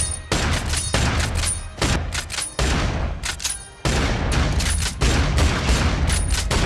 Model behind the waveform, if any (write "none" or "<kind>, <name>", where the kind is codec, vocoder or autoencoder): none